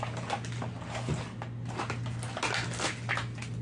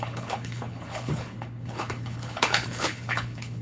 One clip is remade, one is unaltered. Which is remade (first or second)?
second